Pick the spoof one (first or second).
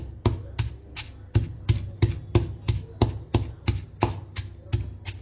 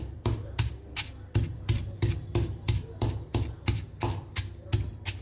second